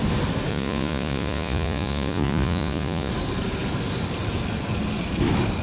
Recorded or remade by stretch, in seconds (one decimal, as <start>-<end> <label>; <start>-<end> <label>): 0.0-0.5 recorded; 0.5-3.1 remade; 3.1-5.6 recorded